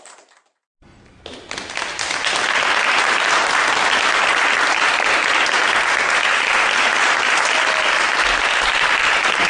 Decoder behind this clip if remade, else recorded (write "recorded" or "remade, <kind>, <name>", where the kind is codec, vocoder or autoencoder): recorded